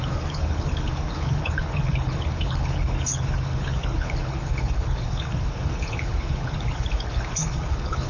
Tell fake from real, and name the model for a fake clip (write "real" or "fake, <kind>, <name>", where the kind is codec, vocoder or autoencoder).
fake, codec, HILCodec